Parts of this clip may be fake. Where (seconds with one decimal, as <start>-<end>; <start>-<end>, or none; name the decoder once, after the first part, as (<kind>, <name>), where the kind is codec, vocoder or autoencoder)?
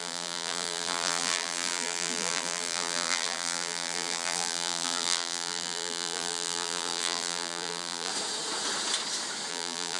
0.0-8.1 (vocoder, BigVGAN v2); 9.5-10.0